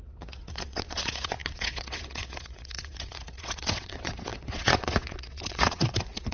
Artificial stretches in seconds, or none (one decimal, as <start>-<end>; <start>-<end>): 0.0-6.3